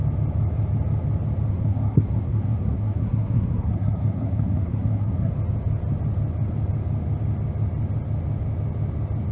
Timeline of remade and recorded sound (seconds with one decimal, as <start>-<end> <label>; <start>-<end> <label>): 0.0-1.5 recorded; 1.5-5.3 remade; 5.3-9.3 recorded